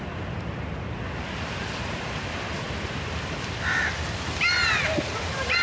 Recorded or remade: remade